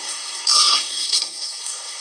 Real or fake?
fake